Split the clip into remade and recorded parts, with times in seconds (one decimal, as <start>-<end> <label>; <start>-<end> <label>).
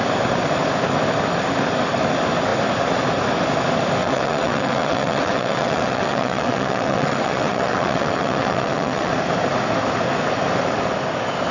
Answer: 0.0-4.0 recorded; 4.0-9.1 remade; 9.1-11.5 recorded